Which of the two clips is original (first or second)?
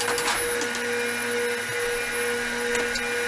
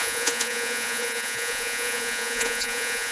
first